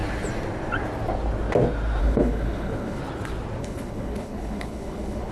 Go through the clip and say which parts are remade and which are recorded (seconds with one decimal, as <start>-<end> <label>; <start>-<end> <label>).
0.0-2.0 recorded; 2.0-3.0 remade; 3.0-3.6 recorded; 3.6-5.3 remade